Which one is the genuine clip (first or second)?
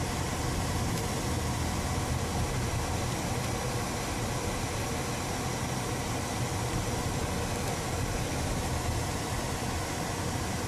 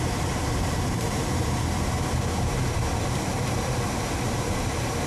first